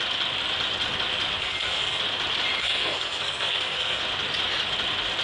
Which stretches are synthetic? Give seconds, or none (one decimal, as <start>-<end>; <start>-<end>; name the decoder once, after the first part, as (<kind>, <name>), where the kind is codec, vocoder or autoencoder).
1.4-2.0 (codec, SNAC); 2.6-4.0